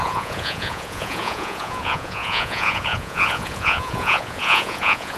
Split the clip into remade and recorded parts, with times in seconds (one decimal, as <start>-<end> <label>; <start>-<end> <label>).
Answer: 0.0-5.2 remade